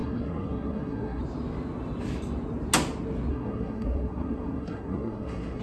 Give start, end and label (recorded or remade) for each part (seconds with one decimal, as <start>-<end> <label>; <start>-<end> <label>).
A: 0.0-1.2 remade; 1.2-3.3 recorded; 3.3-5.6 remade